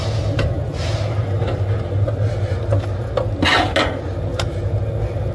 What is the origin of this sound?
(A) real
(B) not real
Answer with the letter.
A